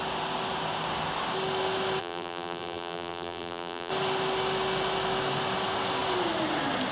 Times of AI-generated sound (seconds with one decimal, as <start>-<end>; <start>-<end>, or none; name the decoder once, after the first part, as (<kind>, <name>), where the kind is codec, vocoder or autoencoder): 2.0-3.9 (vocoder, BigVGAN v2)